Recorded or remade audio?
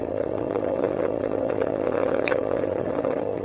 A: remade